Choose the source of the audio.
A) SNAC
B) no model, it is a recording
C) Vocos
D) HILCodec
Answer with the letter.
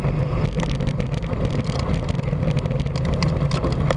B